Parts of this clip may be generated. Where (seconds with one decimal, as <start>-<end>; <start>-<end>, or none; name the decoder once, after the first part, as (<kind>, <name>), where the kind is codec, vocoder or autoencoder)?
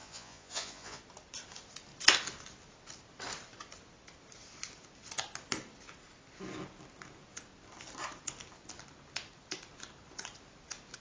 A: 0.0-1.0 (vocoder, Vocos)